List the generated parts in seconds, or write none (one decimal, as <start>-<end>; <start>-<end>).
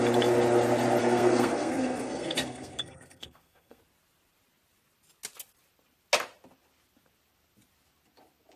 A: 1.0-3.8